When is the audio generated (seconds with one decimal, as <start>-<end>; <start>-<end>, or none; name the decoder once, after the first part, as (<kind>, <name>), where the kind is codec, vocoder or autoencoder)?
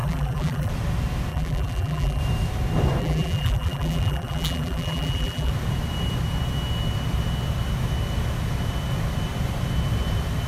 0.0-0.7 (vocoder, BigVGAN v2); 1.3-2.2; 3.0-5.5